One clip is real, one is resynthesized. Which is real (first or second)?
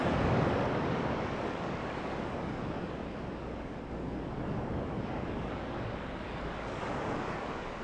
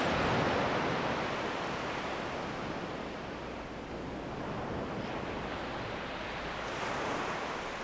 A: second